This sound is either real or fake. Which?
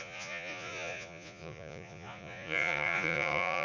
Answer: fake